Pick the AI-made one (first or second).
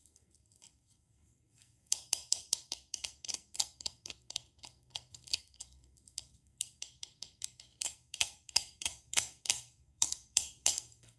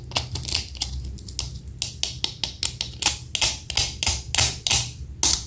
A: first